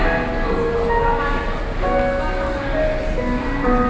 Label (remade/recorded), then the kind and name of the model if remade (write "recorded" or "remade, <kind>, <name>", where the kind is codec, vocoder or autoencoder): recorded